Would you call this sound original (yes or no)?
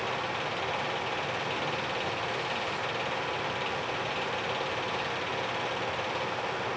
yes